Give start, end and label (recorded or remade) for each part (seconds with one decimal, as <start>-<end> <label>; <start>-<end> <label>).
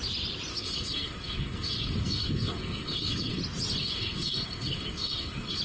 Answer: 0.0-0.5 recorded; 0.5-3.4 remade; 3.4-3.8 recorded; 3.8-5.6 remade